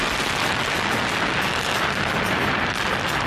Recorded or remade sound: recorded